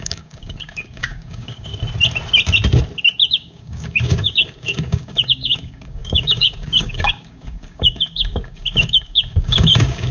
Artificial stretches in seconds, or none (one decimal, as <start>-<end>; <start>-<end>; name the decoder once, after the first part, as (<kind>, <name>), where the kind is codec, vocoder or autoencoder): 0.0-1.7 (codec, DAC); 3.3-10.1